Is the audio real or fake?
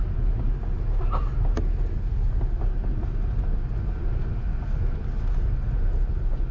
real